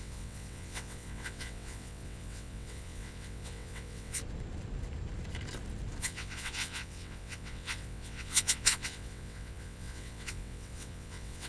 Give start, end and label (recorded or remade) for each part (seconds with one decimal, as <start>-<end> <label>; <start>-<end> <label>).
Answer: 0.0-4.2 remade; 4.2-6.0 recorded; 6.0-11.5 remade